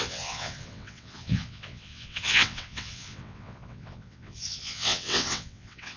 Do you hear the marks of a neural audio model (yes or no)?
yes